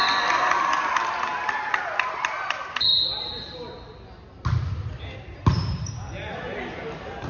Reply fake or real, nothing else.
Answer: real